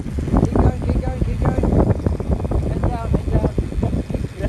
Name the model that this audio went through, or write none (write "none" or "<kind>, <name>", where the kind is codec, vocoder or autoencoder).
none